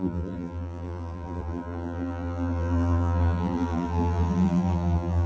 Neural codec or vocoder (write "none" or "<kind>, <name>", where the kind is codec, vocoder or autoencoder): vocoder, BigVGAN v2